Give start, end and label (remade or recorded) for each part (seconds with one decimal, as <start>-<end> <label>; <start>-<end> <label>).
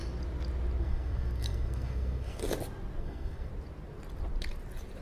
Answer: 0.0-0.8 recorded; 0.8-2.4 remade; 2.4-3.0 recorded; 3.0-3.5 remade; 3.5-5.0 recorded